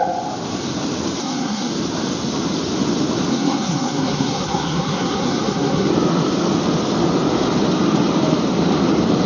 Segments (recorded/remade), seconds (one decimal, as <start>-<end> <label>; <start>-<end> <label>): 0.0-1.2 recorded; 1.2-1.7 remade; 1.7-3.3 recorded; 3.3-5.9 remade; 5.9-9.3 recorded